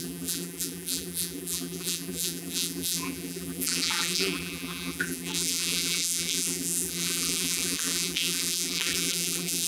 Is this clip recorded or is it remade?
remade